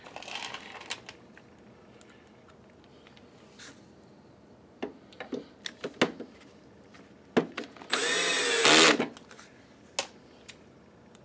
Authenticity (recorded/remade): recorded